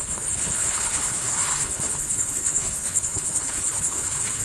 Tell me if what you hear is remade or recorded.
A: remade